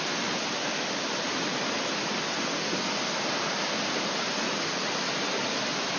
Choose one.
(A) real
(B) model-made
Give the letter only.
A